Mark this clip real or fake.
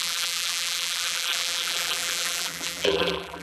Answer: fake